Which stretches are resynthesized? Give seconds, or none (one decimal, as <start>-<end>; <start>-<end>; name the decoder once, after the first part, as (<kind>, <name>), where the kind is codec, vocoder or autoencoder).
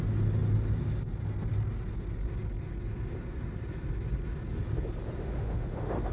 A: 5.2-6.1 (autoencoder, DAC-VAE)